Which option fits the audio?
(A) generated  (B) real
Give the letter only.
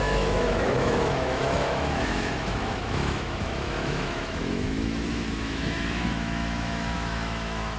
A